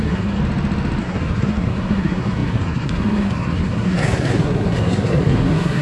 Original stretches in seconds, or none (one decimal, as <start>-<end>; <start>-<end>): 0.4-1.0